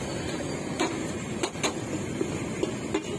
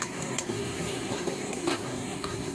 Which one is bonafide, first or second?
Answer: first